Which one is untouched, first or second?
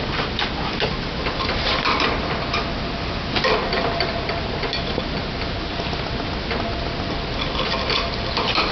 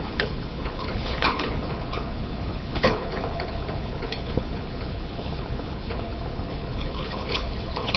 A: first